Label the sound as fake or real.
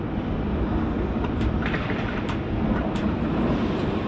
fake